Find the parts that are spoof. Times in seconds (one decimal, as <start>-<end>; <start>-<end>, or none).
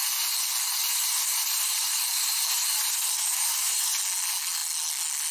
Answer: 0.8-4.0